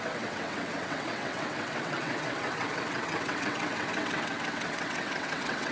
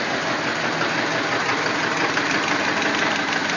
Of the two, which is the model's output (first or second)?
first